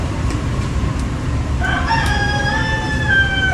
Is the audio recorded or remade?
remade